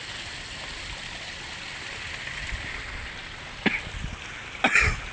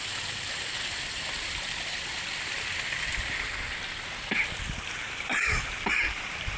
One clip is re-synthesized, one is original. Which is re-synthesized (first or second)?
second